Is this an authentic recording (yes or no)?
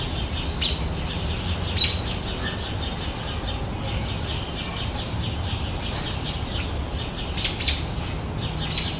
yes